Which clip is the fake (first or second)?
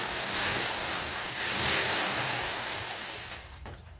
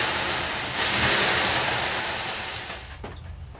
first